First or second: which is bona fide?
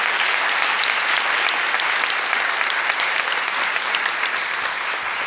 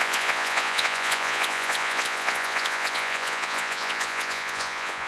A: first